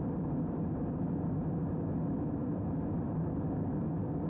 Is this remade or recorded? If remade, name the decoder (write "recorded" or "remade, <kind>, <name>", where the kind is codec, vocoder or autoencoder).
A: recorded